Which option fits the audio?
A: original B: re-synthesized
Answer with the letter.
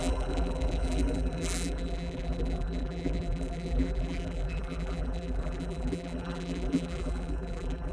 B